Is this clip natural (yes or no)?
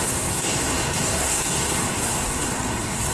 no